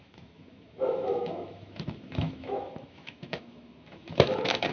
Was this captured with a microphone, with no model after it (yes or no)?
no